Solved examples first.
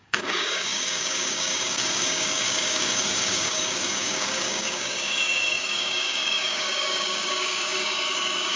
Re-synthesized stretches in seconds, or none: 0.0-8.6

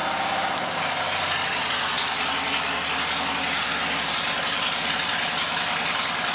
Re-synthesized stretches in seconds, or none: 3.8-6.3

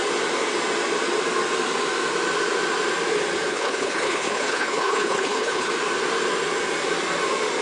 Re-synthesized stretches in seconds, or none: 3.5-5.7